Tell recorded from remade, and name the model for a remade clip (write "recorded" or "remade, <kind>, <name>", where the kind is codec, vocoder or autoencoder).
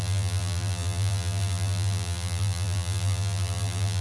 remade, vocoder, BigVGAN v2